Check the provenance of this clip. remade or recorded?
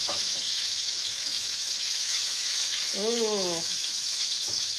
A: remade